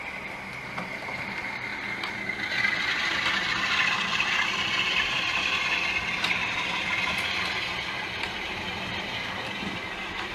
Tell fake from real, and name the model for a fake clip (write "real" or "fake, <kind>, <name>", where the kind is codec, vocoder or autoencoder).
real